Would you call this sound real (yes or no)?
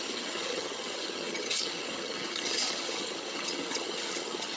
no